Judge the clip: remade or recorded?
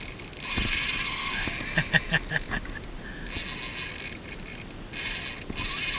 recorded